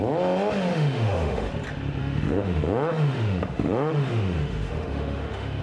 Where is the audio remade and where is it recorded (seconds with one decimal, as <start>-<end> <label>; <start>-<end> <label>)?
0.0-0.7 recorded; 0.7-1.5 remade; 1.5-2.0 recorded; 2.0-5.6 remade